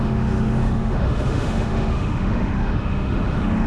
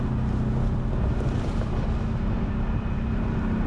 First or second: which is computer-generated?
first